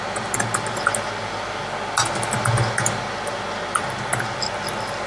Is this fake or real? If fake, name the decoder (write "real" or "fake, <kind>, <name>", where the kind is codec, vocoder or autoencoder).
real